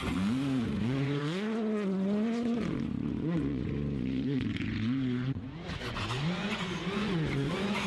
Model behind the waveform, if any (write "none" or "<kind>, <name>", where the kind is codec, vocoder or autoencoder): vocoder, Vocos